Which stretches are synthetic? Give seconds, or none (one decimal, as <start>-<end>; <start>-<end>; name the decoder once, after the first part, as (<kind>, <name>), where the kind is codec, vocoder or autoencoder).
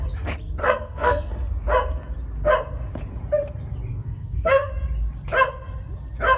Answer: 0.6-1.3 (codec, SNAC); 3.9-4.7